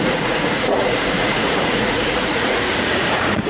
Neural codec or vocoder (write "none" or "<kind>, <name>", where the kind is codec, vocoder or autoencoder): vocoder, Vocos